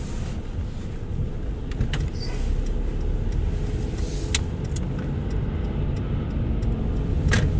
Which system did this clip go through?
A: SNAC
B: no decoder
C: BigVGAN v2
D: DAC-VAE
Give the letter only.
B